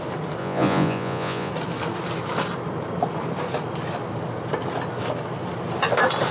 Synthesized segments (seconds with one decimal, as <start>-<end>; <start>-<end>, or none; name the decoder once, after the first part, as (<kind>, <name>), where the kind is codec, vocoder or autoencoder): 0.4-1.5 (vocoder, Vocos)